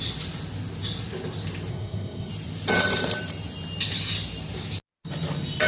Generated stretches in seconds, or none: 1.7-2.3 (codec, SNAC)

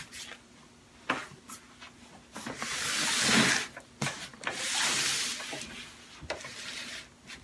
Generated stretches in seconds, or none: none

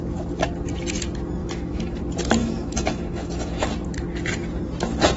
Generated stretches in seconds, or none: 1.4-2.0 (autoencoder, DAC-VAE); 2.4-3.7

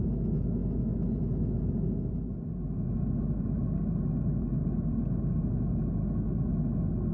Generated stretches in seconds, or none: none

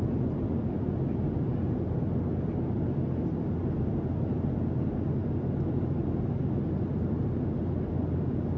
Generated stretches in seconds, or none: none